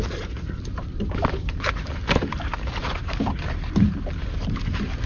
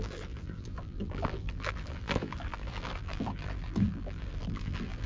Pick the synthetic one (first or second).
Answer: second